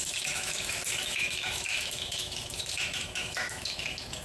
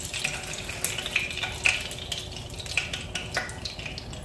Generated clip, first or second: first